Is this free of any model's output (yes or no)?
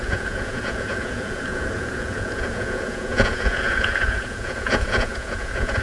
no